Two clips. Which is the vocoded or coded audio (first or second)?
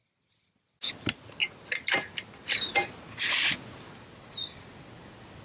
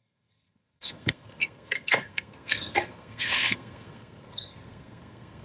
second